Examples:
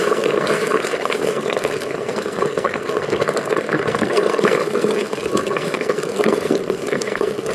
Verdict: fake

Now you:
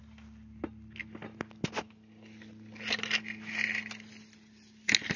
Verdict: real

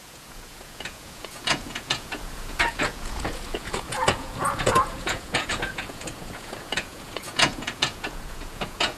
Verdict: fake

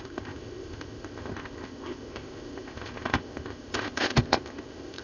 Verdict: fake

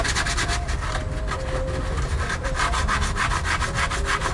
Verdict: real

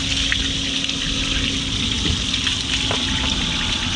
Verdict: real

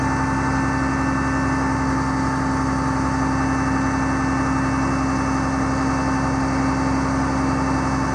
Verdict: real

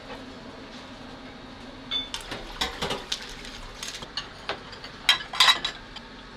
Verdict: real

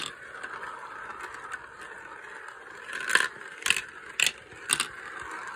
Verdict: real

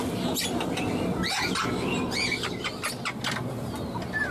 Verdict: real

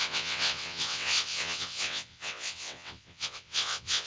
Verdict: fake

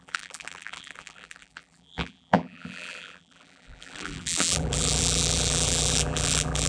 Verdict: fake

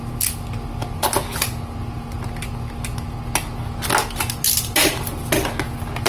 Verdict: real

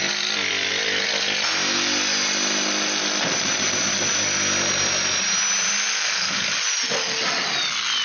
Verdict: real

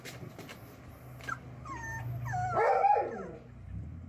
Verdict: real